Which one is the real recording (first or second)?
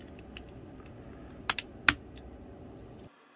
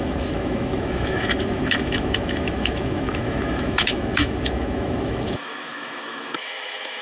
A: first